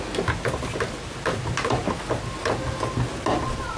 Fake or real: real